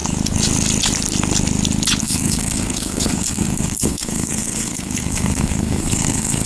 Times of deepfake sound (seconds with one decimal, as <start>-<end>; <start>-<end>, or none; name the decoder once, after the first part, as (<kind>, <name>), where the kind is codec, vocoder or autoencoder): 2.0-6.5 (codec, SNAC)